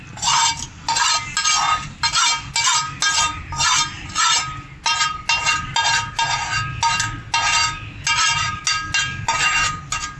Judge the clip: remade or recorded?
recorded